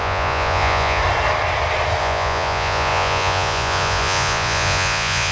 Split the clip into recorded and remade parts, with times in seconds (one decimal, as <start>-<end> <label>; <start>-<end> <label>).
0.0-1.0 remade; 1.0-2.0 recorded; 2.0-5.3 remade